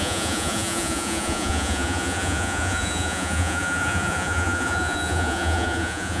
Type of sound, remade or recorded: remade